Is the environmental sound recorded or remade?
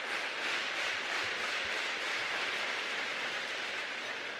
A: recorded